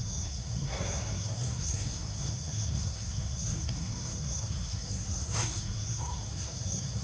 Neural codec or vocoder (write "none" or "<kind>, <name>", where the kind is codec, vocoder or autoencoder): codec, SNAC